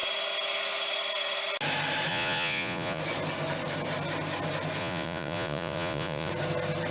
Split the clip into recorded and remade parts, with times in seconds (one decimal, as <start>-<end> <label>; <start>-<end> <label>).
0.0-2.1 recorded; 2.1-3.0 remade; 3.0-4.8 recorded; 4.8-6.3 remade; 6.3-6.9 recorded